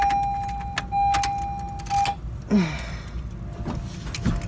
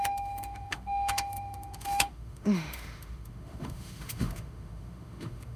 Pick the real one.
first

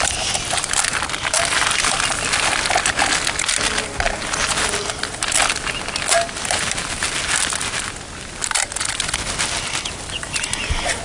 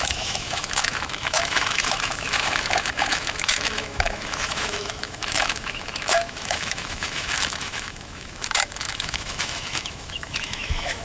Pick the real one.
first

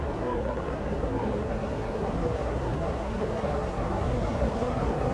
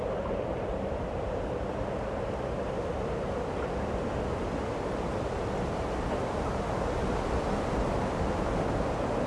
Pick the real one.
second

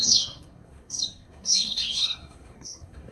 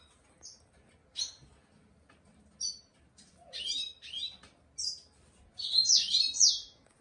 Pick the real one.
second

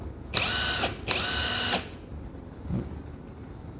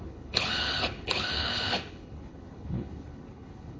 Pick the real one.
first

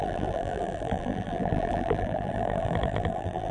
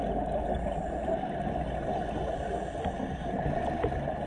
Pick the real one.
second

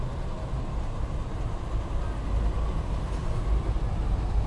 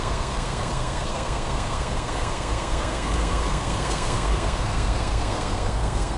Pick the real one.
first